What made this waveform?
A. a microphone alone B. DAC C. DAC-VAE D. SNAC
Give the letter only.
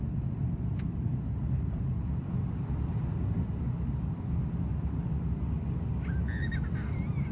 A